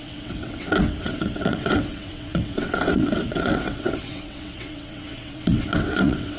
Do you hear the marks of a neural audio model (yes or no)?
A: yes